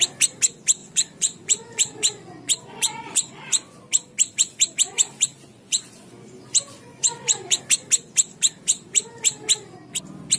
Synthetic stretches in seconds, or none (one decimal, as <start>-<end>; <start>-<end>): 0.8-3.8; 5.5-7.6